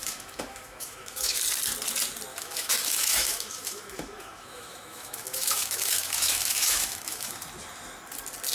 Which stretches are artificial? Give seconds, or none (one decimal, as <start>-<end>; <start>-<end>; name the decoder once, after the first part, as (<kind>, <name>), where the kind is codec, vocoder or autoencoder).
0.0-1.4 (autoencoder, DAC-VAE); 2.3-7.4